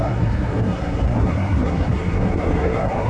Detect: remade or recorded remade